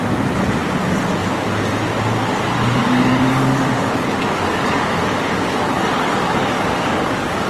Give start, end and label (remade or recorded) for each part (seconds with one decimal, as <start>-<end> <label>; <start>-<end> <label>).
0.0-2.8 recorded; 2.8-7.5 remade